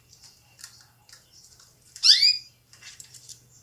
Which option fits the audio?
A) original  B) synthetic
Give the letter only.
B